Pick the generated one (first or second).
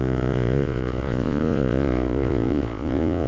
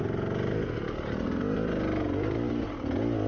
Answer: first